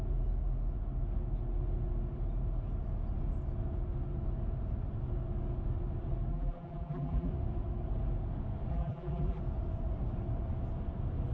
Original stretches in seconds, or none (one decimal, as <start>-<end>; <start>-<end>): 0.0-6.3; 7.3-8.7; 9.4-11.3

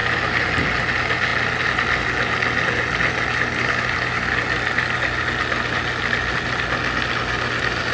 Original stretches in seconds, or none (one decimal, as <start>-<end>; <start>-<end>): 0.0-7.9

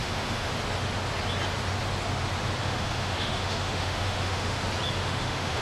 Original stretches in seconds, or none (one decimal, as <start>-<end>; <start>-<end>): 0.5-2.6; 4.6-5.0